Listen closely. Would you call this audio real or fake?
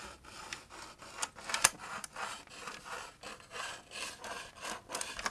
real